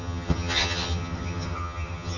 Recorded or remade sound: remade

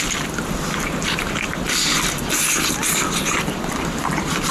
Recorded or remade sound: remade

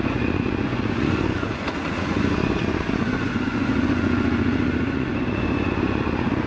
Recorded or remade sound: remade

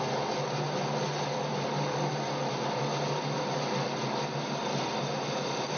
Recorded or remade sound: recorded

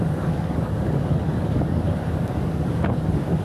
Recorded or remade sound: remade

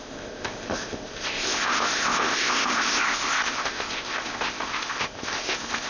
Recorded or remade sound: remade